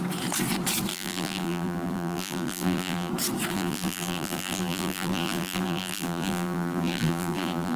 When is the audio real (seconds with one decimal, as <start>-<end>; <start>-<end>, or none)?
0.0-0.9; 3.1-3.5